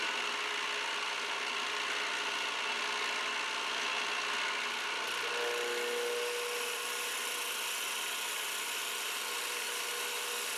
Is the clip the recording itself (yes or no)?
yes